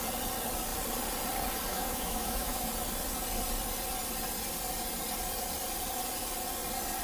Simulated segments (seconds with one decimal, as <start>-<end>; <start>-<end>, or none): 1.7-2.7